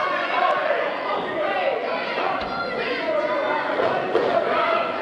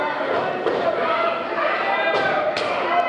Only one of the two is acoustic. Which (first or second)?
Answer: second